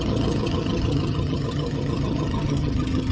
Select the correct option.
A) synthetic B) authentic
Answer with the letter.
A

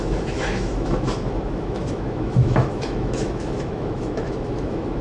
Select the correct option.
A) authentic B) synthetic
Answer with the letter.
B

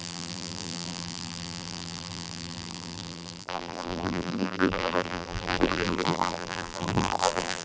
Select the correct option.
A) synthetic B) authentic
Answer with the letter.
A